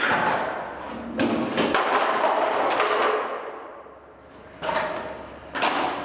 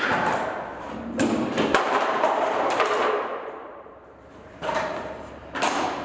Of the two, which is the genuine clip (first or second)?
first